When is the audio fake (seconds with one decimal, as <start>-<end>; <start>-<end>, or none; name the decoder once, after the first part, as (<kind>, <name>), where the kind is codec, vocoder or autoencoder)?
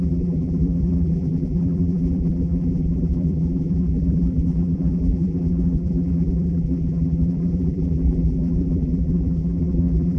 0.0-10.2 (vocoder, BigVGAN v2)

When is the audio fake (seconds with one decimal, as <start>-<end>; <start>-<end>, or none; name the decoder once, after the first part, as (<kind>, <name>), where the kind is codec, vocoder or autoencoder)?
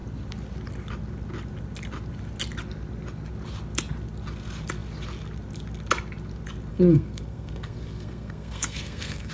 6.7-9.3 (codec, SNAC)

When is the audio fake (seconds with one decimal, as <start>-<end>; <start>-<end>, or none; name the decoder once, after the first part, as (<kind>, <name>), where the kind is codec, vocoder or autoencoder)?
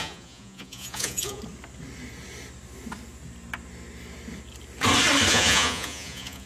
0.0-1.4 (vocoder, Vocos); 5.3-6.5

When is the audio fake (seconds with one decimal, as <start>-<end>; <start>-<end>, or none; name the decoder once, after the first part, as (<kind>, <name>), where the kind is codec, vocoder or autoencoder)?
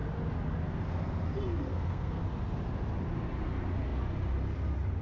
1.7-2.2 (codec, SNAC)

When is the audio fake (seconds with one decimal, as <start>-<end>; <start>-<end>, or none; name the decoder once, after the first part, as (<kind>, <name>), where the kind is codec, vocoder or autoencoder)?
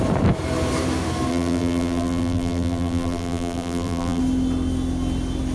1.3-4.2 (vocoder, BigVGAN v2)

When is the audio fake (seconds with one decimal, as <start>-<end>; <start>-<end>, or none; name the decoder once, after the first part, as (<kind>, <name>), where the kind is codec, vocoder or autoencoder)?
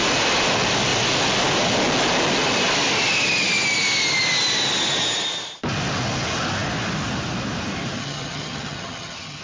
8.0-9.4 (vocoder, HiFi-GAN)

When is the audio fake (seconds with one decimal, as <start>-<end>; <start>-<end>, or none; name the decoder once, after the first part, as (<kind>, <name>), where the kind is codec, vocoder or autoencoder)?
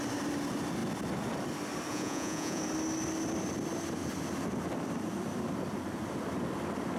1.9-2.6 (vocoder, Vocos)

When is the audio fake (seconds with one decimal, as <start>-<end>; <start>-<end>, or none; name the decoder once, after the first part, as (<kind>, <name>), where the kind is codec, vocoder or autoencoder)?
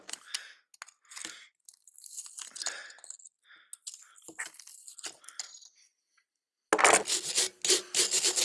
none